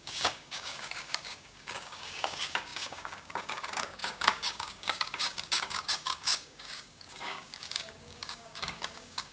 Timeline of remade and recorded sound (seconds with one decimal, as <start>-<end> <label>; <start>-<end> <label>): 0.0-9.3 remade